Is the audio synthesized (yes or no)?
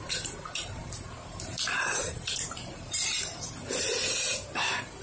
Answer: yes